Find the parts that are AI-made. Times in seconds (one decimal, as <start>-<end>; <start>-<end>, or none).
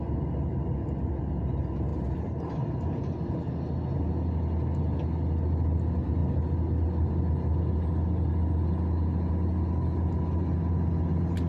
none